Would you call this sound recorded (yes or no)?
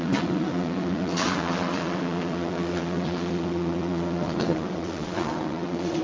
no